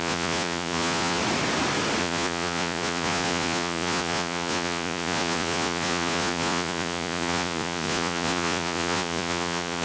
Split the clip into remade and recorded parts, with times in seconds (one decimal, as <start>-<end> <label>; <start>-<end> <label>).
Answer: 0.0-1.2 remade; 1.2-2.0 recorded; 2.0-9.8 remade